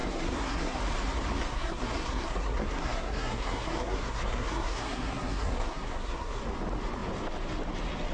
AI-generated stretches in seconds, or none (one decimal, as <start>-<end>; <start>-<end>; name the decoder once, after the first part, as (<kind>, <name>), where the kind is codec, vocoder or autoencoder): 0.0-0.8 (codec, SNAC); 1.5-6.4